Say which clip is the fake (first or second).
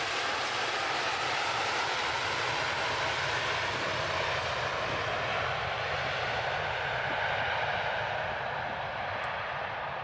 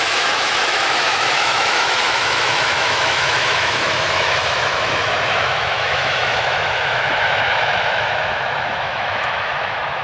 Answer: second